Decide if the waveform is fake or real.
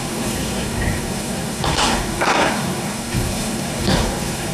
fake